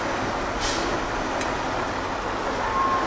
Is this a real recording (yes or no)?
yes